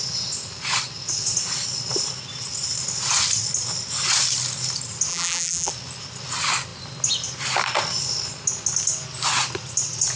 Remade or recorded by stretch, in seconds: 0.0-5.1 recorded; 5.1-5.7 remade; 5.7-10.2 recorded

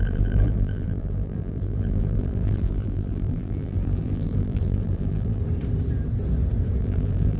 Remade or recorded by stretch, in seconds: 0.0-5.4 remade; 5.4-6.8 recorded; 6.8-7.4 remade

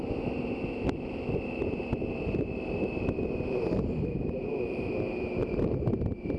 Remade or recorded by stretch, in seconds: 0.0-3.2 recorded; 3.2-4.9 remade; 4.9-5.4 recorded; 5.4-6.0 remade; 6.0-6.4 recorded

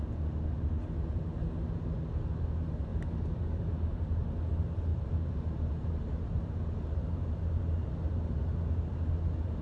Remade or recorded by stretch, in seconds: 0.0-2.9 recorded; 2.9-4.0 remade; 4.0-4.9 recorded; 4.9-7.6 remade; 7.6-9.6 recorded

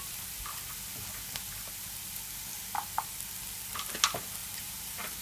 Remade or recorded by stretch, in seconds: 0.0-4.4 recorded; 4.4-5.2 remade

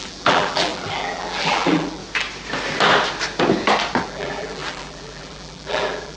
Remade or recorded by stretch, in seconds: 0.0-2.0 remade; 2.0-4.0 recorded; 4.0-6.2 remade